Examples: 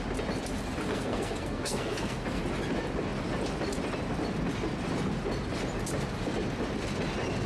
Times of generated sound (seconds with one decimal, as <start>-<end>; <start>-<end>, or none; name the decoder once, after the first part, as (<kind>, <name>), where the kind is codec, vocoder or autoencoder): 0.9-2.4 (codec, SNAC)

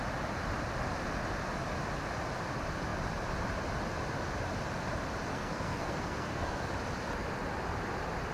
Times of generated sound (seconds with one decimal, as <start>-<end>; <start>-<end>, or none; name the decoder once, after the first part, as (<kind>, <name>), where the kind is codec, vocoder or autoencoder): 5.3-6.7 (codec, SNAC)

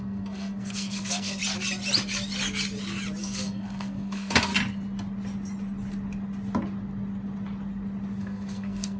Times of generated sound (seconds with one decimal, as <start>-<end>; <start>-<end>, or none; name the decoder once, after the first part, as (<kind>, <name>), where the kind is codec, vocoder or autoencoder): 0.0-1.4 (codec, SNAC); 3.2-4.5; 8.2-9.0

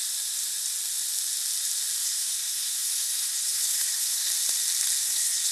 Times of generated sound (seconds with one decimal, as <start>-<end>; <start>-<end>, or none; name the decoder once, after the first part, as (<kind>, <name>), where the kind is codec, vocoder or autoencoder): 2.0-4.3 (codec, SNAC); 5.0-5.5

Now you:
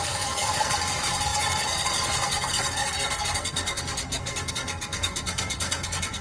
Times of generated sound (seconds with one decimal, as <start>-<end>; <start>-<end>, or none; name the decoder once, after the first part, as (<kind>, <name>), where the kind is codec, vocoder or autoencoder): 0.0-6.2 (codec, SNAC)

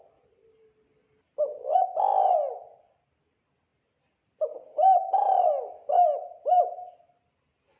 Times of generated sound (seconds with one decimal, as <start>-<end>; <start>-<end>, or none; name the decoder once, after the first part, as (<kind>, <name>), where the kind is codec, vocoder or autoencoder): none

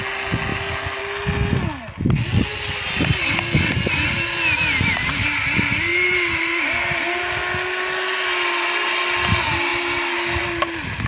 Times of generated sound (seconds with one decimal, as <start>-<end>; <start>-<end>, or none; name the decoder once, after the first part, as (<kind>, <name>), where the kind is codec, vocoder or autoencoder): none